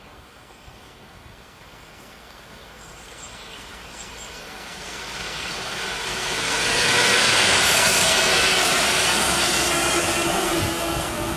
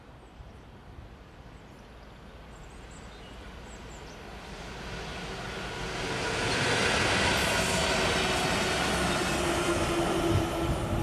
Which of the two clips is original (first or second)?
second